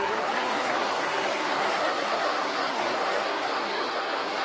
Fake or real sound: fake